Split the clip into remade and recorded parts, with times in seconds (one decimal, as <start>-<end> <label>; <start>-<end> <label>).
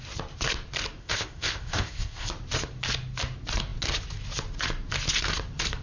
0.0-1.0 recorded; 1.0-2.3 remade; 2.3-5.8 recorded